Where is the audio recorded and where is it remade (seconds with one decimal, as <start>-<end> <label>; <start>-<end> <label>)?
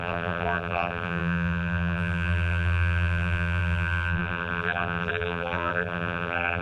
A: 0.0-6.6 remade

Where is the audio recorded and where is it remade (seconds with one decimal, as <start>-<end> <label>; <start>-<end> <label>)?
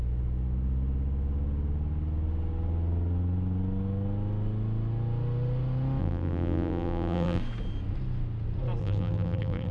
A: 0.0-6.0 recorded; 6.0-7.4 remade; 7.4-8.8 recorded; 8.8-9.7 remade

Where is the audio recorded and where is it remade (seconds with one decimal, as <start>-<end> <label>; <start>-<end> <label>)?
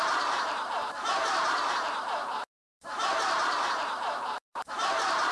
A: 0.0-5.3 remade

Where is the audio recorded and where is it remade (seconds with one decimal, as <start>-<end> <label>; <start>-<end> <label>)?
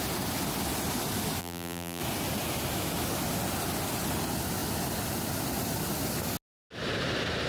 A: 0.0-1.4 recorded; 1.4-2.0 remade; 2.0-7.5 recorded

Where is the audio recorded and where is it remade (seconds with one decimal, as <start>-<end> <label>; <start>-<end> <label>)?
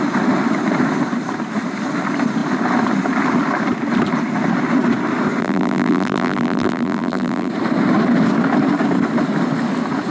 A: 0.0-5.4 recorded; 5.4-7.5 remade; 7.5-10.1 recorded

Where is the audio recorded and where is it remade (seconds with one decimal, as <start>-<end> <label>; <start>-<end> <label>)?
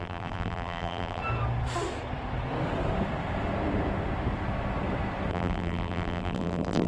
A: 0.0-1.2 remade; 1.2-5.3 recorded; 5.3-6.9 remade